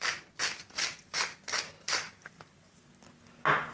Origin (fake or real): real